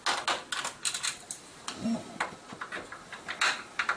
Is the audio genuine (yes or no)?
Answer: yes